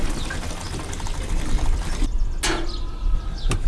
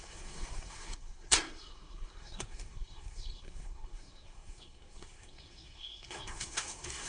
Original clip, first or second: first